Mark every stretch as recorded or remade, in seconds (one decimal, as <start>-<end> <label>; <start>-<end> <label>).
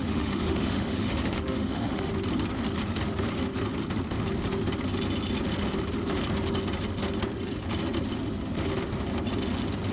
0.0-2.1 remade; 2.1-9.9 recorded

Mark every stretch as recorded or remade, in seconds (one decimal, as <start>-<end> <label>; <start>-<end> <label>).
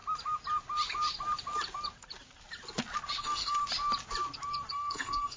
0.0-3.2 recorded; 3.2-3.6 remade; 3.6-4.7 recorded; 4.7-5.4 remade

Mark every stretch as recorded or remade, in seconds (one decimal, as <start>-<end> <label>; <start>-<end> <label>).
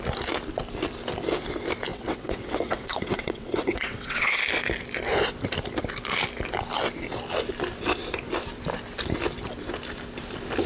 0.0-1.9 recorded; 1.9-4.4 remade; 4.4-10.7 recorded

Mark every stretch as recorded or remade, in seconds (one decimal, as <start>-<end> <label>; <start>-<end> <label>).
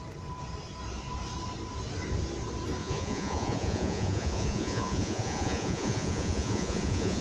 0.0-2.8 recorded; 2.8-7.2 remade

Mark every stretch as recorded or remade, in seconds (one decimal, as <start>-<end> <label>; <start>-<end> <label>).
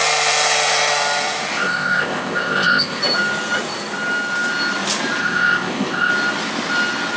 0.0-1.5 recorded; 1.5-3.0 remade; 3.0-5.2 recorded; 5.2-6.1 remade; 6.1-7.2 recorded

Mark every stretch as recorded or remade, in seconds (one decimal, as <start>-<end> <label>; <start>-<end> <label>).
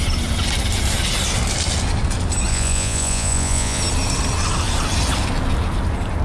0.0-2.5 recorded; 2.5-3.8 remade; 3.8-6.2 recorded